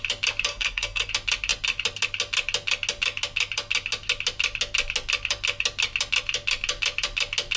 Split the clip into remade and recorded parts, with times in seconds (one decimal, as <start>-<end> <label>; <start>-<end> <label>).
0.0-0.5 recorded; 0.5-1.1 remade; 1.1-7.6 recorded